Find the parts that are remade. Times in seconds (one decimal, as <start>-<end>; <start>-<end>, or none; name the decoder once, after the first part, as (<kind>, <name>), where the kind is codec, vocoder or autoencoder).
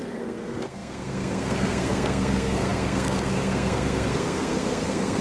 0.0-5.2 (codec, SNAC)